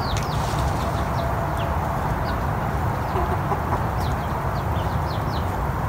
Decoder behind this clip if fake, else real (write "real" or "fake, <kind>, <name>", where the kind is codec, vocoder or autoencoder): real